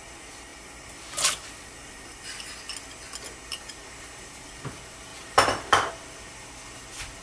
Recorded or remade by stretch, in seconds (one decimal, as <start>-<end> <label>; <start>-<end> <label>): 0.0-3.5 recorded; 3.5-4.4 remade; 4.4-5.1 recorded; 5.1-5.9 remade; 5.9-7.2 recorded